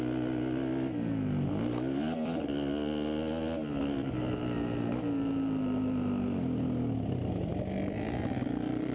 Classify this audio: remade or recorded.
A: recorded